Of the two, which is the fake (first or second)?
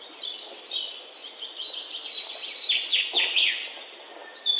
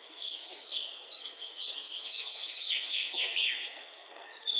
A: second